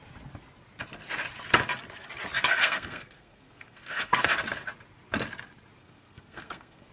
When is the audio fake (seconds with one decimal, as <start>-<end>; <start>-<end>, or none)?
2.6-4.3; 5.8-6.9